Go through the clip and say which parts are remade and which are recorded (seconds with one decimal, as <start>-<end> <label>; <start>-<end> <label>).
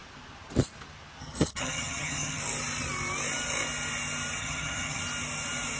0.0-1.2 recorded; 1.2-2.4 remade; 2.4-4.4 recorded; 4.4-5.0 remade; 5.0-5.8 recorded